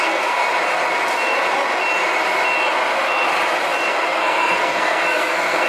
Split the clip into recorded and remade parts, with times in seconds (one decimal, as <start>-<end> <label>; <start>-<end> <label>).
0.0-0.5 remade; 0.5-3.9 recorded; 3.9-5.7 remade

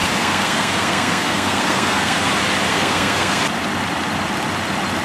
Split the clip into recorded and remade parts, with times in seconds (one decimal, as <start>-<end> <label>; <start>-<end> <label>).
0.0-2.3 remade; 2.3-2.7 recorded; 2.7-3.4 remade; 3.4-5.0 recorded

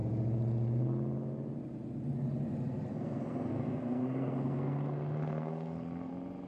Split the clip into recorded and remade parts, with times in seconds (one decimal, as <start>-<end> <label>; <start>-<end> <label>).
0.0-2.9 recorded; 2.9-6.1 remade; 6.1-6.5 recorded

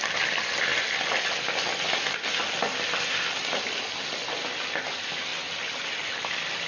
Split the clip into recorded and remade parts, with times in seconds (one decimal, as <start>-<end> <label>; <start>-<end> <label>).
0.0-6.7 recorded

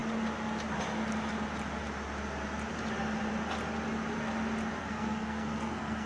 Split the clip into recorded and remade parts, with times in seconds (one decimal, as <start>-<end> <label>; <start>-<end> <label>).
0.0-4.8 recorded; 4.8-6.1 remade

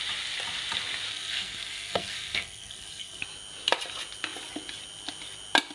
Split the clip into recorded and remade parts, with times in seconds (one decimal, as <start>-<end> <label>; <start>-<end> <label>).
0.0-1.1 recorded; 1.1-3.2 remade; 3.2-5.7 recorded